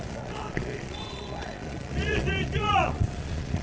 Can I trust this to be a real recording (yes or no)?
no